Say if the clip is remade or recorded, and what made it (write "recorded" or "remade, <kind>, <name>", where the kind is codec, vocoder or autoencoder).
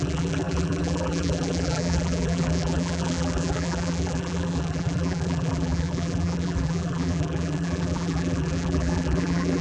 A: remade, vocoder, BigVGAN v2